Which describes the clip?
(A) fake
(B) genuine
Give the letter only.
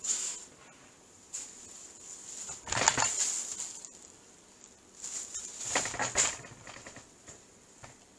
B